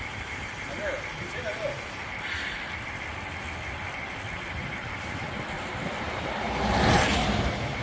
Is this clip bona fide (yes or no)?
yes